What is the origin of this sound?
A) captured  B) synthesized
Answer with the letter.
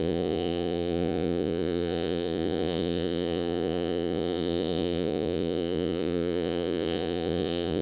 B